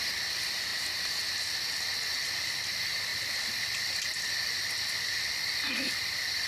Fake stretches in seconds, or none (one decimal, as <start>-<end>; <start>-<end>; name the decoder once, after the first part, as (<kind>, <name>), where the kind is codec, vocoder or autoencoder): none